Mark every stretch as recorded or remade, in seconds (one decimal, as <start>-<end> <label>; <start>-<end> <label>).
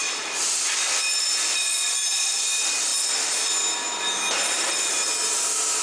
0.0-5.8 recorded